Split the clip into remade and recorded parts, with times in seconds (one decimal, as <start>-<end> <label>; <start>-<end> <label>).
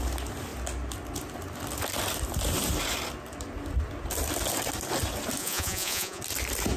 0.0-5.4 recorded; 5.4-6.2 remade; 6.2-6.8 recorded